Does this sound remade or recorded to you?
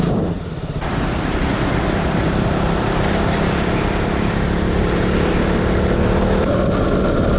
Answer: recorded